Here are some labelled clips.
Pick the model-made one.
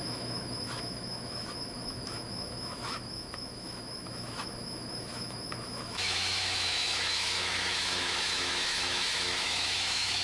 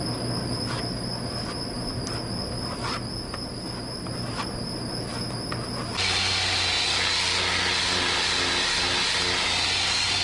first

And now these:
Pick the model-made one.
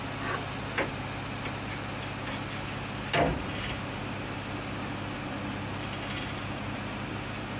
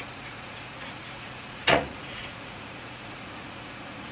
second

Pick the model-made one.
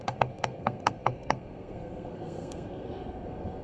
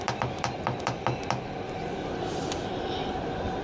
first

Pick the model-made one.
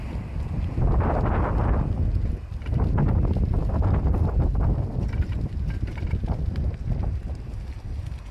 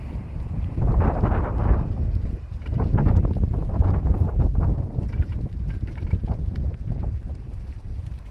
second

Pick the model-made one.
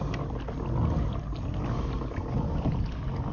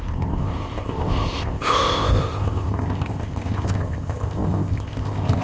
second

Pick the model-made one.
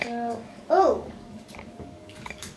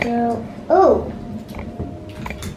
first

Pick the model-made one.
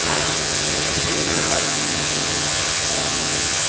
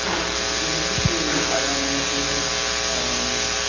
first